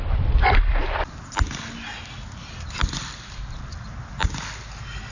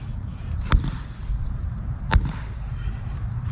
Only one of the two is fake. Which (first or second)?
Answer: second